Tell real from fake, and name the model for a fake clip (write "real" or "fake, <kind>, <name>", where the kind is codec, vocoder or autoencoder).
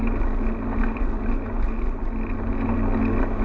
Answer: real